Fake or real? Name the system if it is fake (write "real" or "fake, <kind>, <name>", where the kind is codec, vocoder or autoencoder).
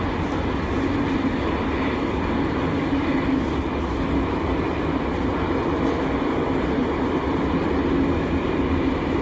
real